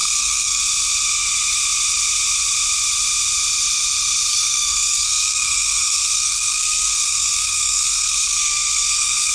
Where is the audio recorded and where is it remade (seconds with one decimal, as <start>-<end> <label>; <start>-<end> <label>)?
0.0-0.6 remade; 0.6-4.3 recorded; 4.3-9.3 remade